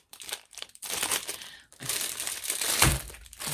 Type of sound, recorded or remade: remade